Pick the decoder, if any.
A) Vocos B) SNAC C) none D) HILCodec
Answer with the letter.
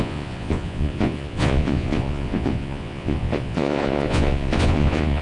A